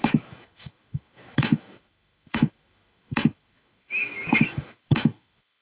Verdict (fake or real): fake